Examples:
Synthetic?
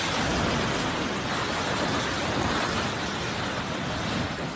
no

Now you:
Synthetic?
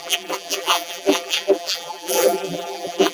yes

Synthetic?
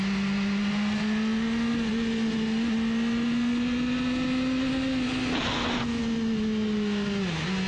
no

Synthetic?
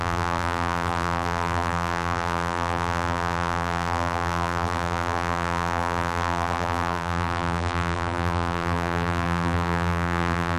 yes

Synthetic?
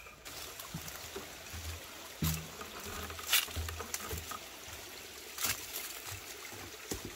no